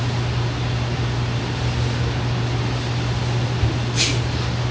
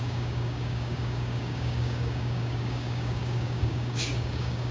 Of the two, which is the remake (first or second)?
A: second